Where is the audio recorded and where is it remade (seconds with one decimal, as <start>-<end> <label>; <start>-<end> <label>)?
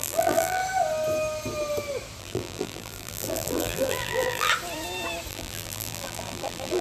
0.0-0.6 remade; 0.6-2.2 recorded; 2.2-4.5 remade; 4.5-5.3 recorded; 5.3-6.8 remade